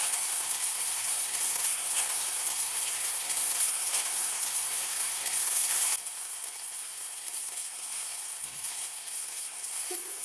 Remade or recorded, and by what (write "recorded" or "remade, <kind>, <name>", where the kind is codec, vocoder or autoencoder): remade, codec, SNAC